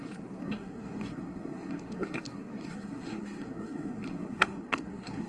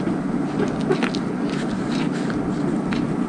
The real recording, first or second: second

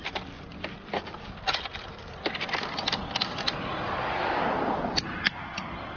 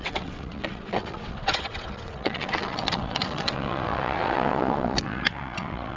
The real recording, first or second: first